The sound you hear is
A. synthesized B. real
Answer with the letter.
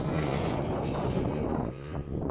A